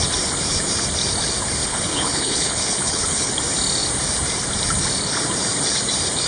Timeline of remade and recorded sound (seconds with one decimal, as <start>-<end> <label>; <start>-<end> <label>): 0.0-1.6 recorded; 1.6-3.3 remade; 3.3-6.3 recorded